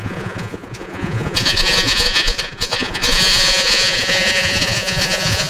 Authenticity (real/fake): fake